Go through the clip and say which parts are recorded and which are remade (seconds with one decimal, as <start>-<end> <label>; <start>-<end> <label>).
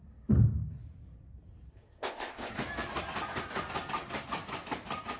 0.0-1.7 recorded; 1.7-2.5 remade; 2.5-5.2 recorded